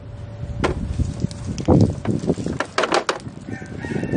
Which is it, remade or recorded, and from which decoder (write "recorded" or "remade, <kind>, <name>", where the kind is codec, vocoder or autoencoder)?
recorded